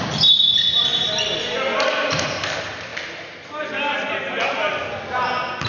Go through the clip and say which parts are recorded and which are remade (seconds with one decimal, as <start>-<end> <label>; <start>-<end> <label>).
0.0-5.7 recorded